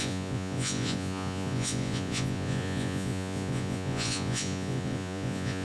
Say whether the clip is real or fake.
fake